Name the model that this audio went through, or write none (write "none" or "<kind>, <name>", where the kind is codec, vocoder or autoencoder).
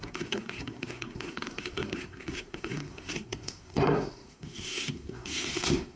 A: codec, SNAC